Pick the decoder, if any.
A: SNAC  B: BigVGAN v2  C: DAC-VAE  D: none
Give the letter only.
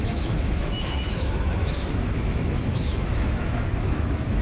C